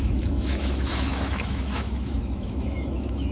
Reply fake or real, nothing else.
fake